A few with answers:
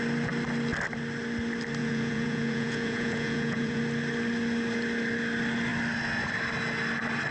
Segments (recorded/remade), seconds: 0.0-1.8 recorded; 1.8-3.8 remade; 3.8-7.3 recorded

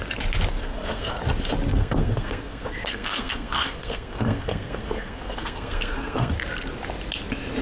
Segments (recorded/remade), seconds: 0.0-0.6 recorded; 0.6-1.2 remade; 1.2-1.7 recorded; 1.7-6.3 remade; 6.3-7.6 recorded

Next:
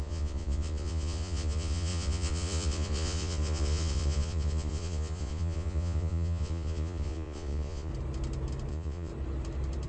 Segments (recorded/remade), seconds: 0.0-7.9 remade; 7.9-8.7 recorded; 8.7-9.1 remade; 9.1-9.9 recorded